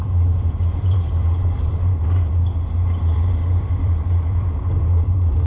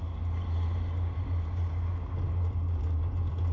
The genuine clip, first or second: second